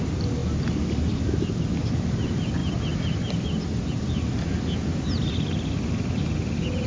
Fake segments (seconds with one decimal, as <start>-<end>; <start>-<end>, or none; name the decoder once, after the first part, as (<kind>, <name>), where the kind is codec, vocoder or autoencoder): none